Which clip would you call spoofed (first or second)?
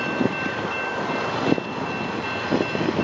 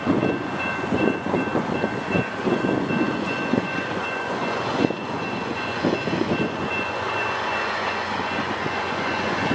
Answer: second